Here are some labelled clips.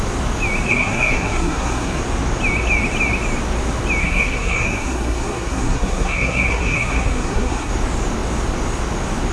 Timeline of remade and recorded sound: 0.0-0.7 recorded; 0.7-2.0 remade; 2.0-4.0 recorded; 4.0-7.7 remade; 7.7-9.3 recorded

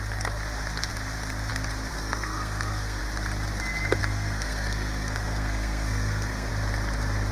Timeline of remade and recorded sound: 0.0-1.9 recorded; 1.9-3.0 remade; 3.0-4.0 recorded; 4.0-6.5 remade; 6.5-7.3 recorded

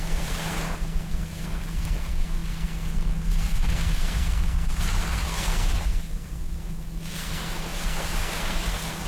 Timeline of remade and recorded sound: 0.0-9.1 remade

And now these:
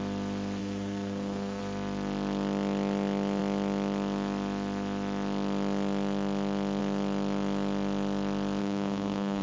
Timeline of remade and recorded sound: 0.0-0.6 recorded; 0.6-1.6 remade; 1.6-8.6 recorded; 8.6-9.4 remade

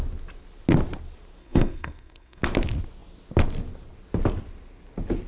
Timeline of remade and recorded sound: 0.0-1.4 recorded; 1.4-2.4 remade; 2.4-5.3 recorded

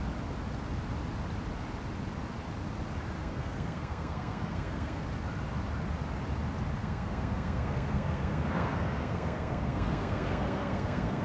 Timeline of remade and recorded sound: 0.0-3.2 recorded; 3.2-5.0 remade; 5.0-6.8 recorded; 6.8-11.2 remade

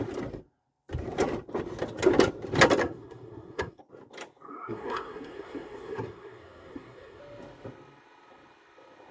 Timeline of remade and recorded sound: 0.0-2.8 recorded; 2.8-3.8 remade; 3.8-4.5 recorded; 4.5-7.2 remade; 7.2-9.1 recorded

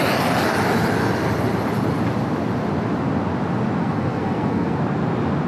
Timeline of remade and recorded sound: 0.0-3.8 recorded; 3.8-4.8 remade; 4.8-5.5 recorded